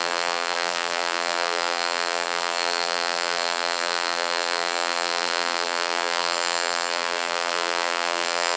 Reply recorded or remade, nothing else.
remade